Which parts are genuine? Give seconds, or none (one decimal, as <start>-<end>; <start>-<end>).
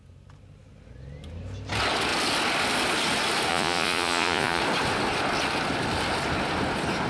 0.0-3.5; 4.6-7.1